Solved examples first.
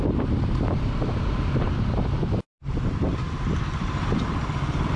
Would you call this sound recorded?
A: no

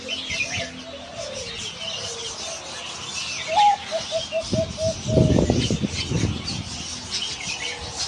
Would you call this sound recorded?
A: yes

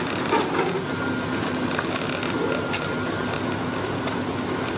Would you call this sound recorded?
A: yes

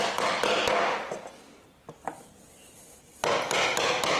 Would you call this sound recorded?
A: yes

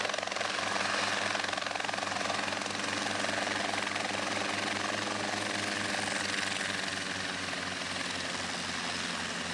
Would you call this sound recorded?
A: yes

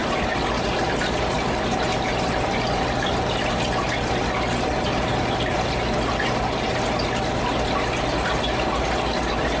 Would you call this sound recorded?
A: yes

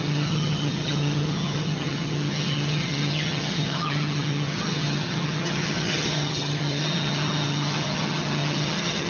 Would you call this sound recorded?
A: no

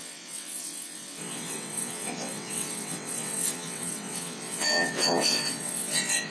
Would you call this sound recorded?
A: no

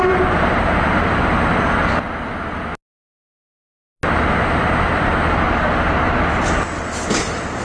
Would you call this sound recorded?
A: yes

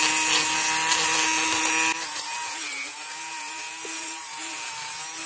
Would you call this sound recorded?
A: yes